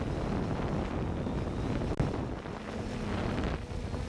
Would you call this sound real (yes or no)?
yes